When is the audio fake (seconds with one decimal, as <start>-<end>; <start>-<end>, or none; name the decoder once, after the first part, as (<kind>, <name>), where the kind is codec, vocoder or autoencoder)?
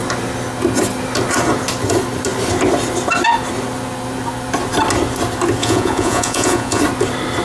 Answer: 5.6-6.8 (vocoder, Vocos)